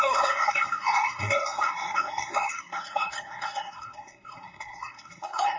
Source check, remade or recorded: remade